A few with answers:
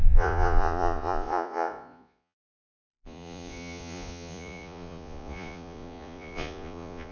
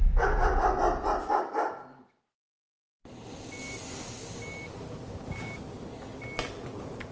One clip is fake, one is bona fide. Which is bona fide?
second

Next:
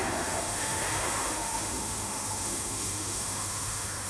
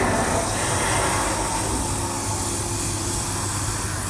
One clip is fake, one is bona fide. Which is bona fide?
second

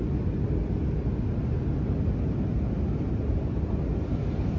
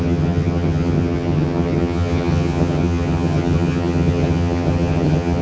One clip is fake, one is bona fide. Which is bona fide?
first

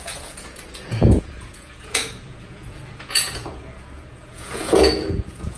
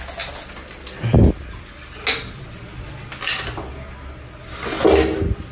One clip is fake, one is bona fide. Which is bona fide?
second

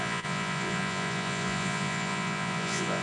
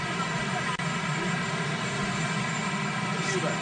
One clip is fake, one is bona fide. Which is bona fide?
second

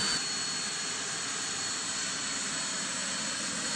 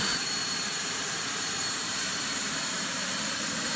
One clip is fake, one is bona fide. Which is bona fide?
first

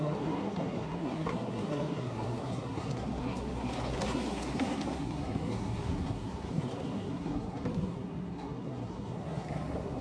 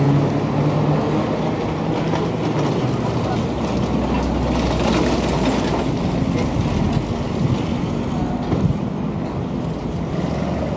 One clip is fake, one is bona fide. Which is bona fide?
second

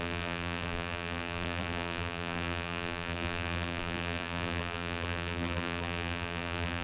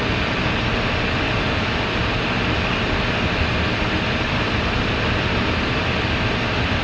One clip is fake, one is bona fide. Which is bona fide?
second